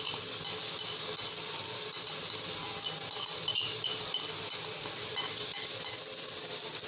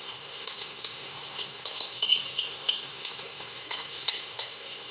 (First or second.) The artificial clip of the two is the second